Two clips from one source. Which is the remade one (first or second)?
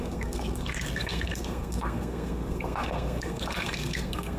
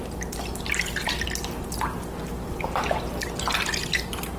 first